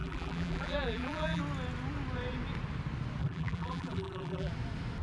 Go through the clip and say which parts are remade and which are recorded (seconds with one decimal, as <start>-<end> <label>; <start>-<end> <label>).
0.0-1.4 remade; 1.4-3.2 recorded; 3.2-4.5 remade; 4.5-5.0 recorded

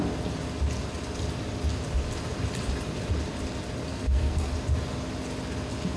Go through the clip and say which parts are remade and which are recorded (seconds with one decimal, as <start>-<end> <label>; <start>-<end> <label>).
0.0-3.9 recorded; 3.9-4.5 remade; 4.5-6.0 recorded

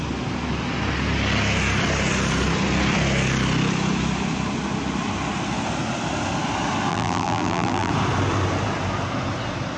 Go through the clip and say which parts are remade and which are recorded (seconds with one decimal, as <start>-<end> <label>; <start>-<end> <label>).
0.0-6.9 recorded; 6.9-7.9 remade; 7.9-9.8 recorded

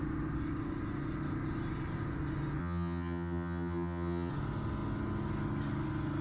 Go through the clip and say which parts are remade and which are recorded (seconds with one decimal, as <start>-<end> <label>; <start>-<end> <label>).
0.0-2.6 recorded; 2.6-4.3 remade; 4.3-6.2 recorded

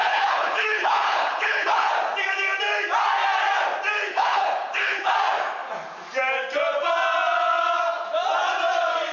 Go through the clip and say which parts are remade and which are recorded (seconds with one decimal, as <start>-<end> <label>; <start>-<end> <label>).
0.0-1.9 remade; 1.9-4.1 recorded; 4.1-5.1 remade; 5.1-9.1 recorded

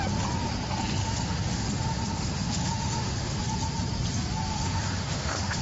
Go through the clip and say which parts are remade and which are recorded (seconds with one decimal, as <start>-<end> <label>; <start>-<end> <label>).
0.0-1.0 recorded; 1.0-3.4 remade; 3.4-4.5 recorded; 4.5-5.6 remade